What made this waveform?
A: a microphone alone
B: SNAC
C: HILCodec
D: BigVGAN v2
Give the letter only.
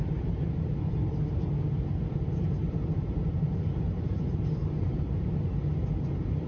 D